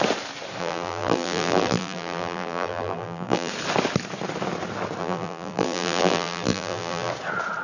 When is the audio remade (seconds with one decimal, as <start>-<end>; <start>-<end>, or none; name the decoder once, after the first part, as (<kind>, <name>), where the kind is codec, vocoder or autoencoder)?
0.6-3.5 (vocoder, BigVGAN v2); 5.0-7.1